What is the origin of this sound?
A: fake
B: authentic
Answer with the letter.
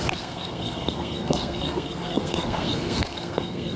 A